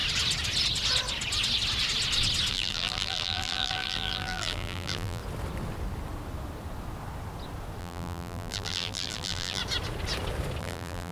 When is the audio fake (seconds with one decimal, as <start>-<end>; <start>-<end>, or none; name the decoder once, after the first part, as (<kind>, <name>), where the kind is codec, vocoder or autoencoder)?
2.5-5.2 (vocoder, BigVGAN v2); 7.8-9.6; 10.6-11.1